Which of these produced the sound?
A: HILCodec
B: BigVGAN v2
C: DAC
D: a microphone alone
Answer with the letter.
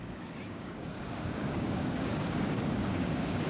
C